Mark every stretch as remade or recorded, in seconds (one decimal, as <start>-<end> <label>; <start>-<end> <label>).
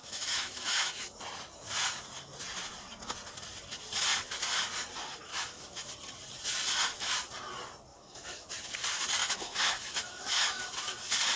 0.0-1.2 remade; 1.2-5.3 recorded; 5.3-5.9 remade; 5.9-7.9 recorded; 7.9-8.5 remade; 8.5-9.2 recorded; 9.2-10.7 remade; 10.7-11.4 recorded